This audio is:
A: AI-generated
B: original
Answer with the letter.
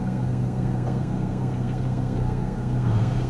A